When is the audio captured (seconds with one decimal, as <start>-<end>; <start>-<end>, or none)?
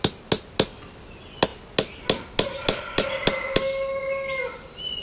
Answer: 0.0-5.0